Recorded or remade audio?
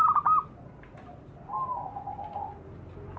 recorded